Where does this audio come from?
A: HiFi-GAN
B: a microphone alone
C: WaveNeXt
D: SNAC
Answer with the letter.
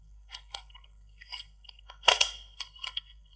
D